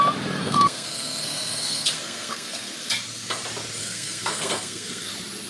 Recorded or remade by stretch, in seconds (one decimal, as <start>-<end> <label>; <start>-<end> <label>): 0.0-0.4 recorded; 0.4-2.9 remade; 2.9-3.8 recorded; 3.8-5.1 remade; 5.1-5.5 recorded